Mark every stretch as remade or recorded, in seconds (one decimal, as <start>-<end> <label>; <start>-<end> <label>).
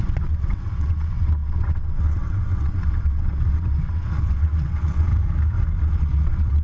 0.0-5.1 remade; 5.1-5.8 recorded; 5.8-6.6 remade